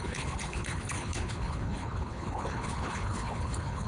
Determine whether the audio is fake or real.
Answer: fake